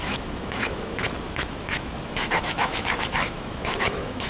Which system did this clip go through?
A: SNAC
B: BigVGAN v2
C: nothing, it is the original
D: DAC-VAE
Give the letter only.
D